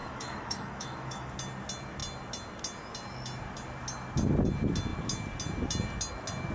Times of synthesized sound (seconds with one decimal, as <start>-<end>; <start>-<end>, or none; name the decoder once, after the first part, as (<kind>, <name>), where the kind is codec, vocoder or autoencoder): 0.0-1.3 (autoencoder, DAC-VAE)